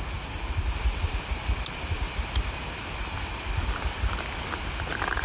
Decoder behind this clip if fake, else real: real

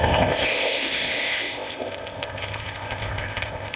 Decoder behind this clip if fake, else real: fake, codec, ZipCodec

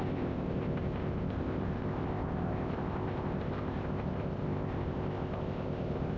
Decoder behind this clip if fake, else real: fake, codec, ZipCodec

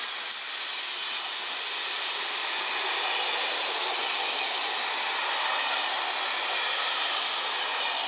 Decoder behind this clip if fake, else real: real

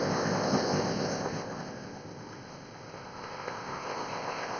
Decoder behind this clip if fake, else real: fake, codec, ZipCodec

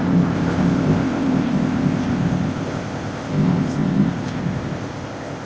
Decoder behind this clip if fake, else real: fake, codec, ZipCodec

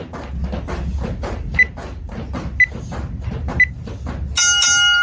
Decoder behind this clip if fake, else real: real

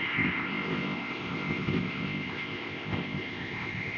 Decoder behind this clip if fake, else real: fake, codec, ZipCodec